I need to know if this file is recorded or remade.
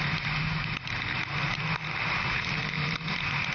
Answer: recorded